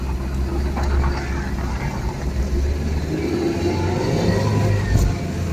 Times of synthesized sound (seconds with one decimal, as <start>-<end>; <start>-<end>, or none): none